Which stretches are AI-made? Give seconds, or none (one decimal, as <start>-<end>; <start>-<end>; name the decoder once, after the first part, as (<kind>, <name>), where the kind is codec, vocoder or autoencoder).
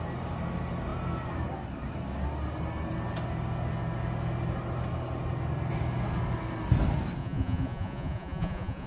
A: 7.2-8.9 (vocoder, Vocos)